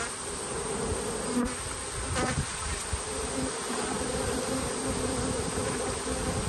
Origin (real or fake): real